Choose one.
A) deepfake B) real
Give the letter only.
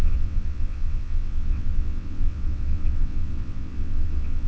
A